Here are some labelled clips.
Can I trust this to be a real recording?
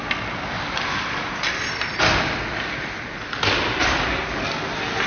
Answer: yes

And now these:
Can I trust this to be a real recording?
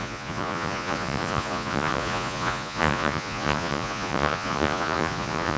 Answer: no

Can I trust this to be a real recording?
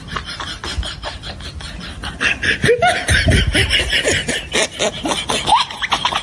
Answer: yes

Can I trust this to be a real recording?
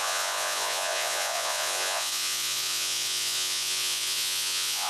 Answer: no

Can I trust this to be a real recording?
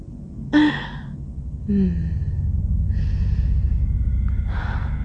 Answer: yes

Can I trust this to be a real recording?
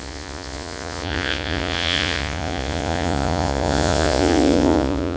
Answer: no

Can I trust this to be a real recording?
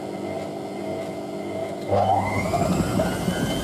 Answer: yes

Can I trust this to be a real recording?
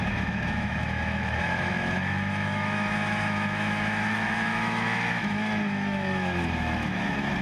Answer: no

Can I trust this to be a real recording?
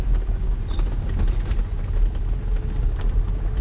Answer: yes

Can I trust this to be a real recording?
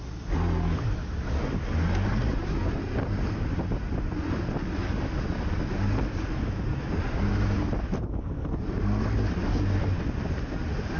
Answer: yes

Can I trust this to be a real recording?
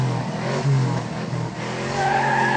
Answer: no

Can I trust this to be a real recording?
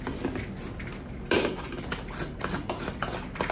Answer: yes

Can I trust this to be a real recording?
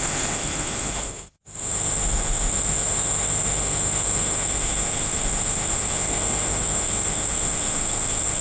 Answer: no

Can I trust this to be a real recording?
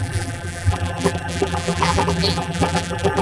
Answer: no